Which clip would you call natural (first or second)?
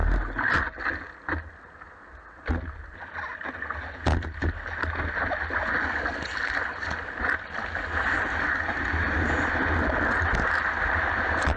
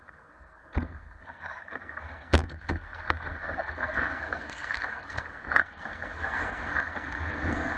first